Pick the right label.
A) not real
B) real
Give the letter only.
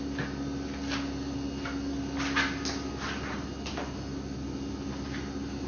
B